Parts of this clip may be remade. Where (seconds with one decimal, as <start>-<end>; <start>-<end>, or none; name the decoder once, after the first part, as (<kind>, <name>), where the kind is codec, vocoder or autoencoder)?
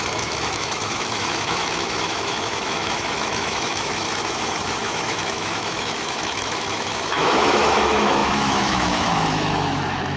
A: 0.0-10.2 (autoencoder, DAC-VAE)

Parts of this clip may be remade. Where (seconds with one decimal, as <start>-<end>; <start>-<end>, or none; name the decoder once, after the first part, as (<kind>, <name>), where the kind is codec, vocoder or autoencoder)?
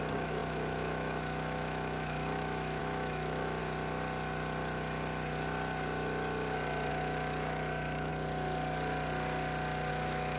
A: 0.0-3.6 (autoencoder, DAC-VAE); 6.9-8.1; 9.9-10.4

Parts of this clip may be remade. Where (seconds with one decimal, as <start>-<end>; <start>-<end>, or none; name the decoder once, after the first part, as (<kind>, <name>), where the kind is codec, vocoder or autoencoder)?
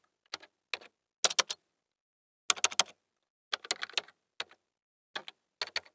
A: none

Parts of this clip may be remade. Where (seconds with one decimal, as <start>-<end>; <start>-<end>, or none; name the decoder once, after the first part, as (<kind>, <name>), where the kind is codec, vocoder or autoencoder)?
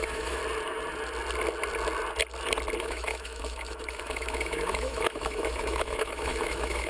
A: 0.0-0.4 (autoencoder, DAC-VAE); 2.8-6.9